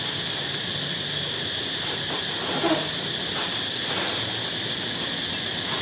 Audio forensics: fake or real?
real